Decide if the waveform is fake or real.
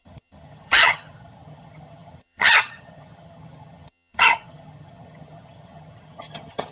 fake